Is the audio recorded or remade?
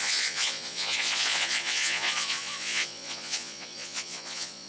remade